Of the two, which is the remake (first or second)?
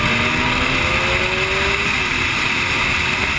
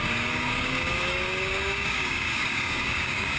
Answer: second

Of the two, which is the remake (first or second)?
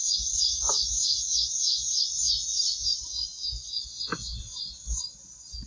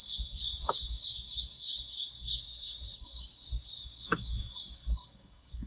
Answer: second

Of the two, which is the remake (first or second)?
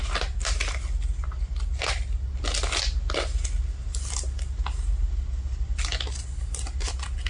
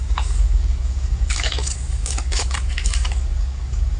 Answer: second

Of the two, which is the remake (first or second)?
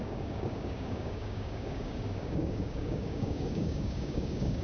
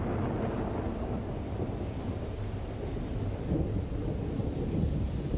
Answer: first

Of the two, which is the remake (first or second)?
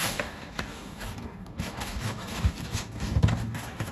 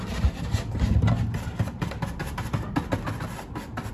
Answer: first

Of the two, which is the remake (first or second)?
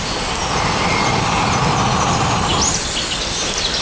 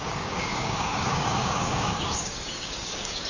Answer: second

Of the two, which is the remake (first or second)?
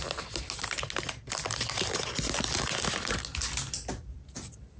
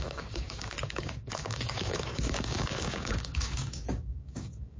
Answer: second